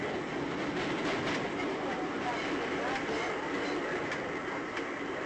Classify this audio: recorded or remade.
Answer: recorded